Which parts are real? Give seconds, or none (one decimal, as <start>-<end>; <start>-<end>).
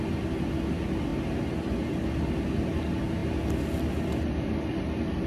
0.0-5.3